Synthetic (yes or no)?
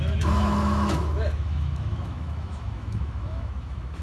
yes